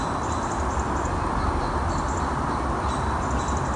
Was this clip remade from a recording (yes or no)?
no